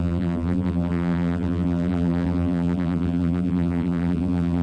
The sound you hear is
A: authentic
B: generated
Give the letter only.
B